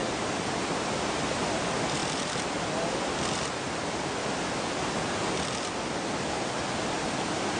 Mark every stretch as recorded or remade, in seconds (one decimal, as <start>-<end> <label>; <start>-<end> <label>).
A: 0.0-7.6 recorded